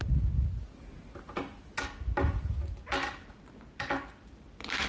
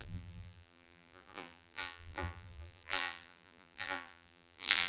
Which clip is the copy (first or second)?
second